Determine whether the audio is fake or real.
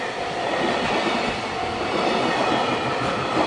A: real